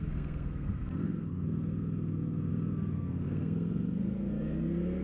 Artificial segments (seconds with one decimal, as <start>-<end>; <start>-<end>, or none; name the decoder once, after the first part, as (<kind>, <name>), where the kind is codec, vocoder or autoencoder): 0.0-5.0 (codec, SNAC)